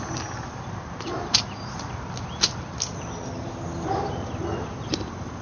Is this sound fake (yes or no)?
no